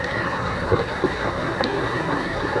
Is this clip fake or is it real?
fake